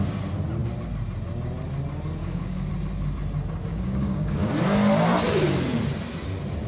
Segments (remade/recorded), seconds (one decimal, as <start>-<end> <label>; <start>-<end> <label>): 0.0-2.2 recorded; 2.2-2.7 remade; 2.7-3.7 recorded; 3.7-4.5 remade; 4.5-6.7 recorded